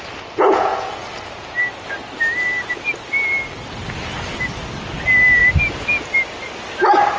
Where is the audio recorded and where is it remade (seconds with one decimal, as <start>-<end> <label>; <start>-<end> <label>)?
0.0-7.2 recorded